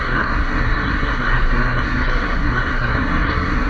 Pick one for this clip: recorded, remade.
remade